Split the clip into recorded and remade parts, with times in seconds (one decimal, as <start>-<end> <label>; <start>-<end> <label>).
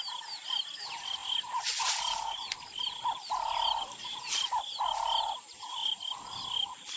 0.0-7.0 recorded